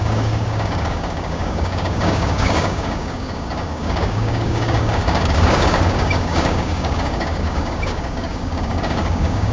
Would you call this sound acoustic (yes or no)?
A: no